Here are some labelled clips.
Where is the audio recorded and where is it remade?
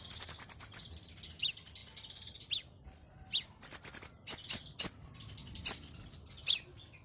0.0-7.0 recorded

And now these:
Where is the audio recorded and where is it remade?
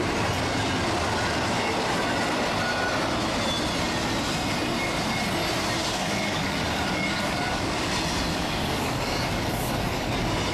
0.0-5.8 recorded; 5.8-7.9 remade; 7.9-8.3 recorded; 8.3-10.1 remade; 10.1-10.5 recorded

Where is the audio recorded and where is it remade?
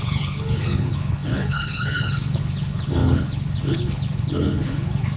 0.0-5.2 remade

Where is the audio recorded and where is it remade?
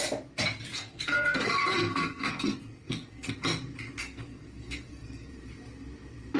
0.0-0.7 recorded; 0.7-3.3 remade; 3.3-4.0 recorded; 4.0-5.3 remade; 5.3-6.4 recorded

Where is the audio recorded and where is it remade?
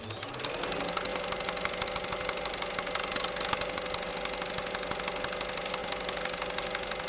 0.0-7.1 recorded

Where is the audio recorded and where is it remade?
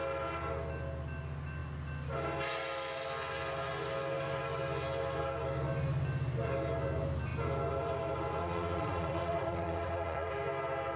0.0-8.4 recorded; 8.4-10.3 remade; 10.3-11.0 recorded